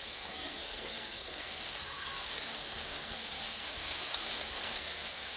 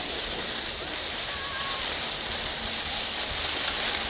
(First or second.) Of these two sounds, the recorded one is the second